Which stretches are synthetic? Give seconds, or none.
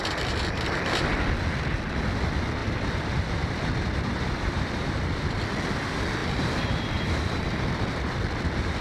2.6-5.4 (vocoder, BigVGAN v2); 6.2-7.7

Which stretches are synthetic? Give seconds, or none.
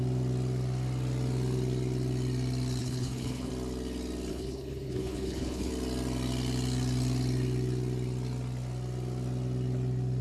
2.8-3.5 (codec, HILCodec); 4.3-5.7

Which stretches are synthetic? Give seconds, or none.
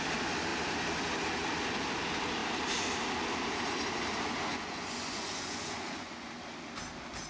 4.5-6.3 (vocoder, Vocos)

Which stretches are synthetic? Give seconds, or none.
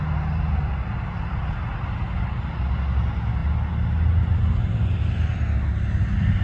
none